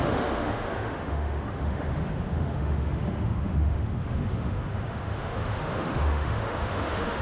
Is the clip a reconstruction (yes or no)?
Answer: yes